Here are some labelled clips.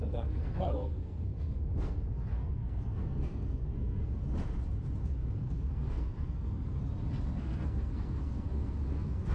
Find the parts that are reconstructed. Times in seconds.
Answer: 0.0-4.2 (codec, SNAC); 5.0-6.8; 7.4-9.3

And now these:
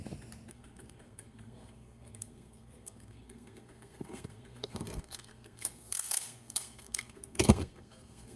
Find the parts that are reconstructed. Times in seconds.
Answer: 0.5-8.4 (codec, SNAC)

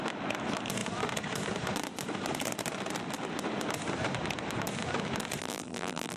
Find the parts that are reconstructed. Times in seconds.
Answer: 5.4-6.2 (vocoder, BigVGAN v2)